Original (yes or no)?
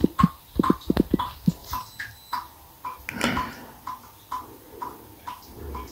yes